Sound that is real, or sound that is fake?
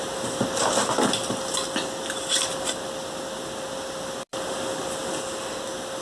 real